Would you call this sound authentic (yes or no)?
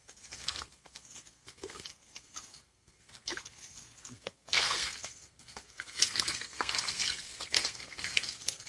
no